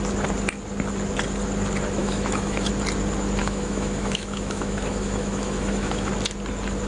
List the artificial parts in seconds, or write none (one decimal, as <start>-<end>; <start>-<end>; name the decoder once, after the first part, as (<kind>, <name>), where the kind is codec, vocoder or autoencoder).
2.0-2.7 (autoencoder, DAC-VAE); 3.4-6.1